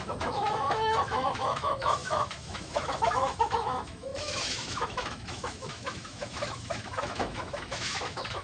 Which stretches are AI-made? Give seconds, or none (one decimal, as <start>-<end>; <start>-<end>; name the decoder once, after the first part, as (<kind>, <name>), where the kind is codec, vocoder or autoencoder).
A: 0.0-8.4 (autoencoder, DAC-VAE)